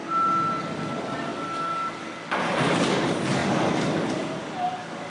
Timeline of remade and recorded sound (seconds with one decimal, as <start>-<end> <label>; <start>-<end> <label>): 0.0-0.6 recorded; 0.6-5.1 remade